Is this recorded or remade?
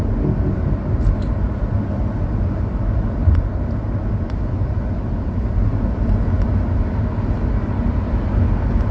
recorded